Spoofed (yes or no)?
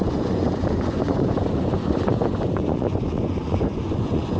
yes